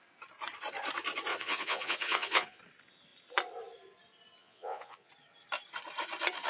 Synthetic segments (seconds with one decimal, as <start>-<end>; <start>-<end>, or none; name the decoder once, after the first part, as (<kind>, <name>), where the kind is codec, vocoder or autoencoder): 1.3-2.6 (vocoder, Vocos); 4.4-5.1